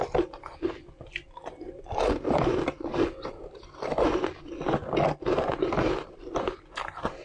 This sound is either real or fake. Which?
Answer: fake